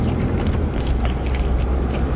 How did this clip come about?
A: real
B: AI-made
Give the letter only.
A